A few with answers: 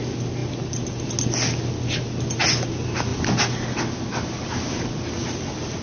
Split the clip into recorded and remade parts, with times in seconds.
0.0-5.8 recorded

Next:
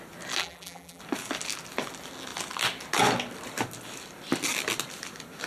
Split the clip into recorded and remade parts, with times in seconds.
0.0-0.4 recorded; 0.4-1.0 remade; 1.0-5.5 recorded